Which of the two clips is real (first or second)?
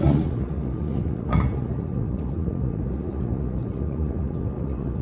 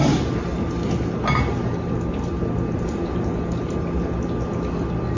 second